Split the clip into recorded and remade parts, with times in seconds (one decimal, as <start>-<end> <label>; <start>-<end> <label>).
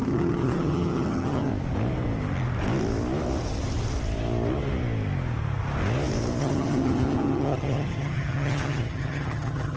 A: 0.0-1.5 remade; 1.5-6.4 recorded; 6.4-9.8 remade